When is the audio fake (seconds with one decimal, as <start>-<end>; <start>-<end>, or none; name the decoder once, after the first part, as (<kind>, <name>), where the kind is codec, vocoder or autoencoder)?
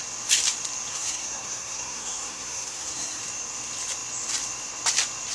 0.9-3.2 (codec, SNAC)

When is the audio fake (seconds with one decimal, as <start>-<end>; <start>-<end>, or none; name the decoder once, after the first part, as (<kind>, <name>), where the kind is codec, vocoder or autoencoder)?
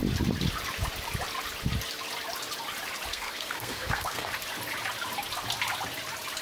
3.1-4.3 (codec, SNAC)